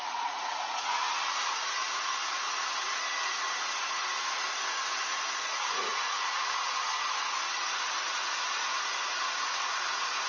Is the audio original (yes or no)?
no